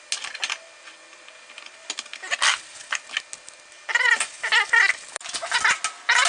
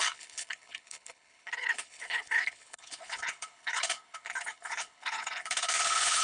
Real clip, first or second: first